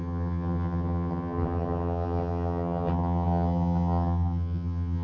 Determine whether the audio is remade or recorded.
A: remade